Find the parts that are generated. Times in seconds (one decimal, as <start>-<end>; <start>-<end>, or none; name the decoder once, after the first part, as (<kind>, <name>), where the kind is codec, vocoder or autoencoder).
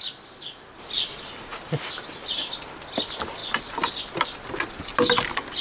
none